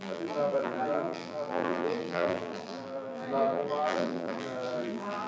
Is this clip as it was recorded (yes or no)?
no